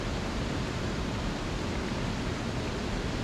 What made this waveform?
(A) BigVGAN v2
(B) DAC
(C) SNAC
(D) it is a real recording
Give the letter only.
A